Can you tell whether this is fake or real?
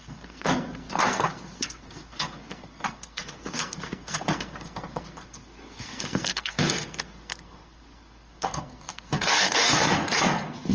fake